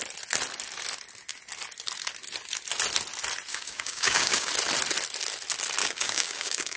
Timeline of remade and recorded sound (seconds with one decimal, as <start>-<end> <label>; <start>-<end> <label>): 0.0-3.5 recorded; 3.5-4.5 remade; 4.5-5.8 recorded; 5.8-6.8 remade